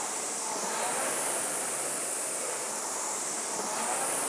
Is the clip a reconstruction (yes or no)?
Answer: no